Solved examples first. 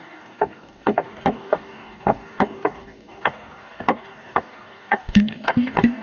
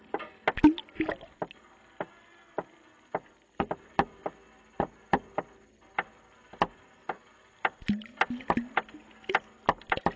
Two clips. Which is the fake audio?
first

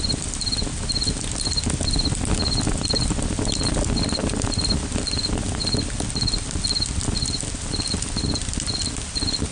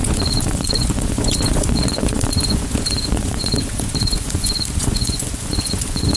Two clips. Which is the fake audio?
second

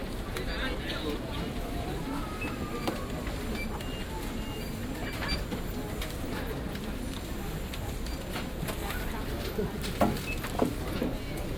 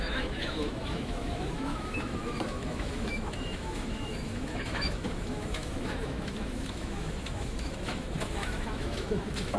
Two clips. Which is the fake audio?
second